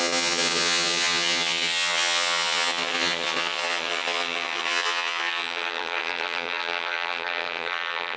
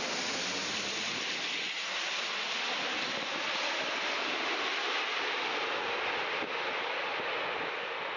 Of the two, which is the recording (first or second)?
second